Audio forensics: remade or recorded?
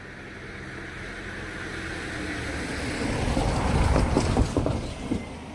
recorded